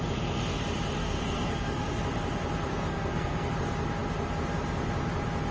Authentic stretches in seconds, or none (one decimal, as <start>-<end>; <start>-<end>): 0.0-1.0; 2.0-2.7; 3.5-5.5